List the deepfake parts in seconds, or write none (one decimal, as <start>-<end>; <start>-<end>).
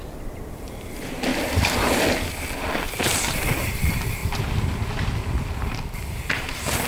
0.0-1.3; 2.3-4.2; 5.6-6.9